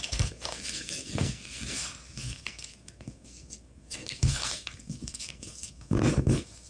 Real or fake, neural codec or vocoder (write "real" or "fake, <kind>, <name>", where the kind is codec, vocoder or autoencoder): fake, codec, SNAC